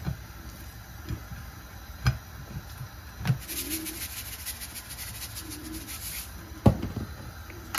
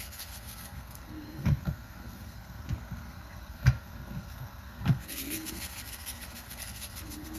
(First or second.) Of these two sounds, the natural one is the first